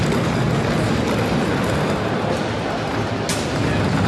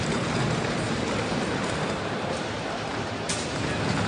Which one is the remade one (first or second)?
second